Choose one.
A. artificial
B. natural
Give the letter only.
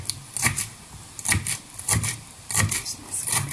B